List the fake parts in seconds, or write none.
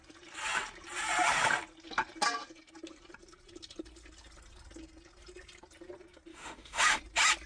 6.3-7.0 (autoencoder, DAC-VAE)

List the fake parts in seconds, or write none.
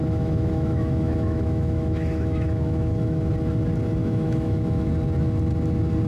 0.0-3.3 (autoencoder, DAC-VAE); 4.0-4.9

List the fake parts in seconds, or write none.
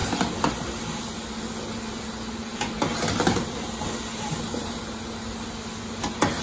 none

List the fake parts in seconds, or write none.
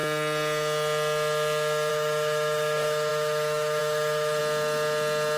1.9-4.4 (autoencoder, DAC-VAE)